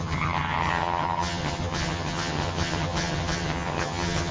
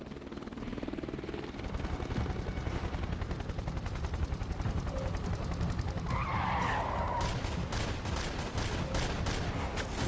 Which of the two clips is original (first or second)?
second